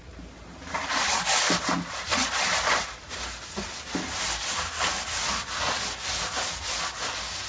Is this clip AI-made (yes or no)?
no